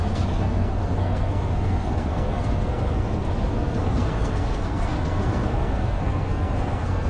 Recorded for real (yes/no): no